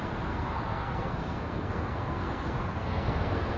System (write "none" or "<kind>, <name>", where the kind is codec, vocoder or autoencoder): codec, SNAC